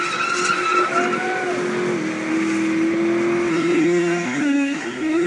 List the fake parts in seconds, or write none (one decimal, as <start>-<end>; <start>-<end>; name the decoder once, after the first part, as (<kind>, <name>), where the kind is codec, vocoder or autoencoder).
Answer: 3.5-5.3 (codec, SNAC)